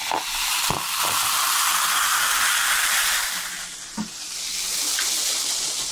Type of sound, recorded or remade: recorded